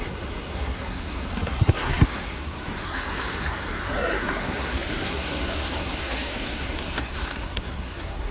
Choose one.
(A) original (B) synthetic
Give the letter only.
B